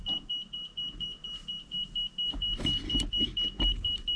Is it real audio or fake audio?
real